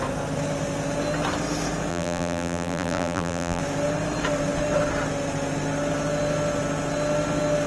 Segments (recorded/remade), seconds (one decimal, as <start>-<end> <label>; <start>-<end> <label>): 0.0-1.9 recorded; 1.9-3.6 remade; 3.6-7.7 recorded